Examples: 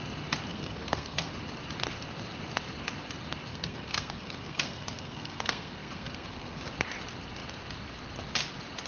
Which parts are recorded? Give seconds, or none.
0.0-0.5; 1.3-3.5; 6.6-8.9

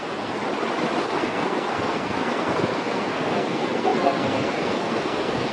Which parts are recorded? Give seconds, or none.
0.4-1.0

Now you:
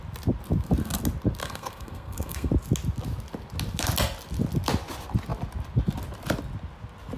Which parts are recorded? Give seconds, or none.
0.0-1.4; 2.5-7.2